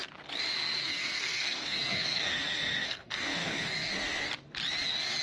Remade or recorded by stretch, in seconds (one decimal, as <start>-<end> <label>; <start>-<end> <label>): 0.0-0.8 recorded; 0.8-3.9 remade; 3.9-5.2 recorded